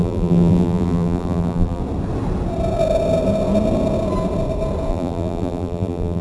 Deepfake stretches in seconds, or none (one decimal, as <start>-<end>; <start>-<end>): 0.0-1.8; 4.9-6.2